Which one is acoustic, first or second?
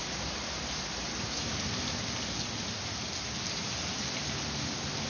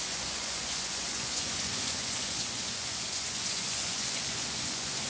first